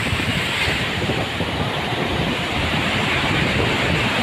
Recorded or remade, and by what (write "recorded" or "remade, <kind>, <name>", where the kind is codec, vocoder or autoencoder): remade, vocoder, BigVGAN v2